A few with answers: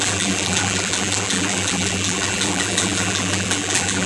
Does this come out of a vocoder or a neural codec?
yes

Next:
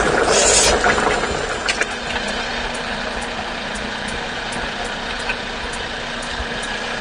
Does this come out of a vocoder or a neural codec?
no